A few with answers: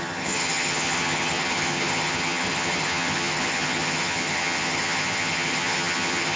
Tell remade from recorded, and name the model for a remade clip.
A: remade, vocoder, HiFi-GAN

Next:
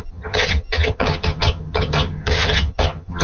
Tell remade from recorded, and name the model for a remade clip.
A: remade, vocoder, HiFi-GAN